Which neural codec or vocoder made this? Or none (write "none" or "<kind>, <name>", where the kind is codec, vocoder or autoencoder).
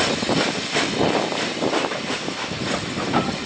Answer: none